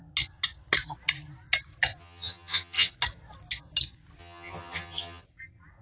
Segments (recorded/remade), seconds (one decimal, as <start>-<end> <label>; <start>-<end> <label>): 0.0-2.0 recorded; 2.0-2.9 remade; 2.9-4.2 recorded; 4.2-5.2 remade; 5.2-5.8 recorded